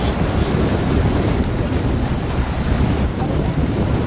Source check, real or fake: fake